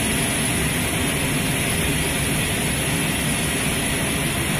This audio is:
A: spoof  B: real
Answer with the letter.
B